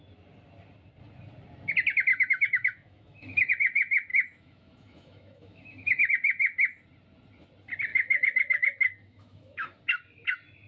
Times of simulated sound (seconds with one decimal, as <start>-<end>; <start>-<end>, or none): 2.1-3.5; 4.1-6.1; 7.9-9.8